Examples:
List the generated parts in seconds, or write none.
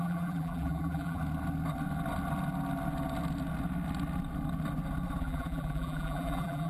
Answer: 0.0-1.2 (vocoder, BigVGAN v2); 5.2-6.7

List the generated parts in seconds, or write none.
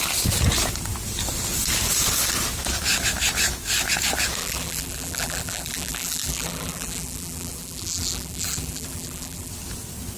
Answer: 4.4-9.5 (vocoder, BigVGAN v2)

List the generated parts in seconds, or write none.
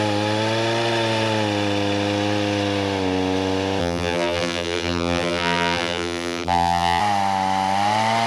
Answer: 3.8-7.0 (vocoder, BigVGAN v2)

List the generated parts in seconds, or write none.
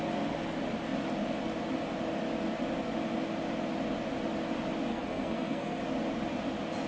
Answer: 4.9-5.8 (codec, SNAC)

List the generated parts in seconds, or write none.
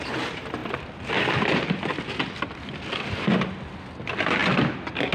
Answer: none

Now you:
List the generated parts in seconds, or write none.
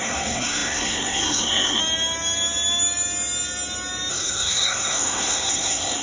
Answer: 0.0-1.8 (codec, SNAC); 4.1-6.0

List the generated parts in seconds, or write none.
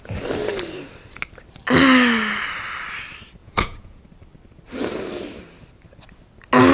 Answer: 3.4-4.0 (vocoder, Vocos)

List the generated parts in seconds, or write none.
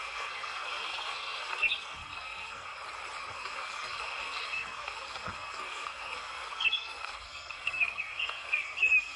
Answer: 0.0-2.7 (codec, SNAC); 3.2-9.2